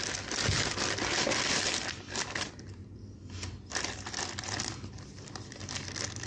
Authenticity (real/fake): real